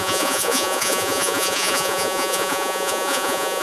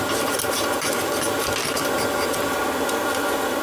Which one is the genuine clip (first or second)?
second